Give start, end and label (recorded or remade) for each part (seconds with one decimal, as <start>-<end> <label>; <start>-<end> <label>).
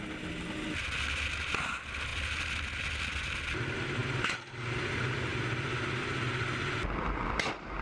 0.0-7.8 recorded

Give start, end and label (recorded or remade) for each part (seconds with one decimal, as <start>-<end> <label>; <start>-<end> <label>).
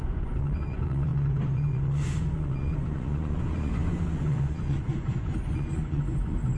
0.0-6.6 remade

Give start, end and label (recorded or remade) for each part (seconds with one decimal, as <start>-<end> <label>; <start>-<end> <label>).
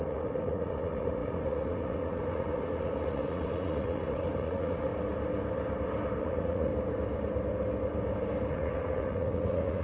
0.0-4.9 remade; 4.9-6.2 recorded; 6.2-6.7 remade; 6.7-8.5 recorded; 8.5-9.8 remade